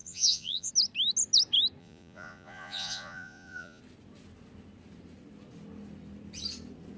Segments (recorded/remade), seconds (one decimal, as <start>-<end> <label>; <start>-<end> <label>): 0.0-0.7 remade; 0.7-1.8 recorded; 1.8-3.8 remade; 3.8-7.0 recorded